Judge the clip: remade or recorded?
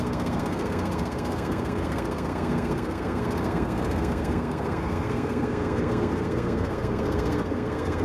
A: remade